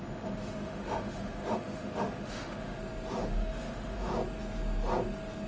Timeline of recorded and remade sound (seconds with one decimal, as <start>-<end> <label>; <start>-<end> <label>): 0.0-2.8 remade; 2.8-3.3 recorded; 3.3-4.1 remade; 4.1-5.5 recorded